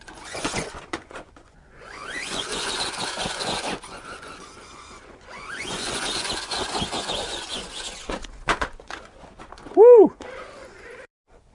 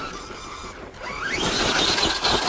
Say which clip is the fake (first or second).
first